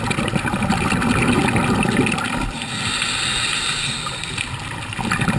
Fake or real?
fake